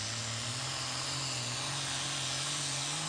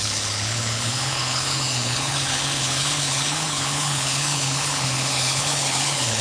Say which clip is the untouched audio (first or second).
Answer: first